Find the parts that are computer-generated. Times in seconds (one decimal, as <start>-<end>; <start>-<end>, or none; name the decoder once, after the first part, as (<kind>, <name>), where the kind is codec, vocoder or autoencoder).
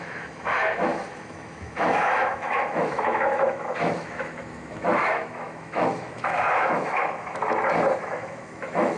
0.0-7.4 (autoencoder, DAC-VAE); 8.0-9.0